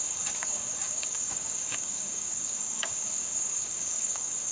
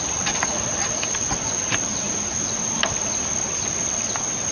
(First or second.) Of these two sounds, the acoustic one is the second